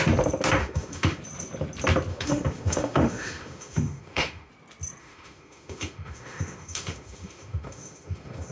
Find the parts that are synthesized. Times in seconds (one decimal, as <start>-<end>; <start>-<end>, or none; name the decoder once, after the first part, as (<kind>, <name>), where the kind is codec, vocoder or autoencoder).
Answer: 0.6-1.2 (autoencoder, DAC-VAE); 2.1-4.5; 5.0-8.5